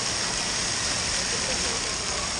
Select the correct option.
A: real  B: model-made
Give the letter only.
A